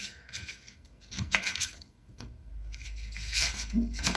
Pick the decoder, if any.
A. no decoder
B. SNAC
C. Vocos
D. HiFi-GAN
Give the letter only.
B